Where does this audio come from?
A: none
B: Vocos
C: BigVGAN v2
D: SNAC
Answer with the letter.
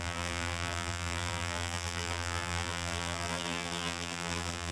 C